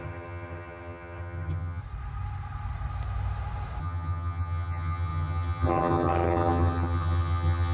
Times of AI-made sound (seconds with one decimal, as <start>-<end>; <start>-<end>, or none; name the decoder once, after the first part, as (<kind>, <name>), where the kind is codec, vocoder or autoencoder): 0.0-1.8 (vocoder, HiFi-GAN); 3.8-7.7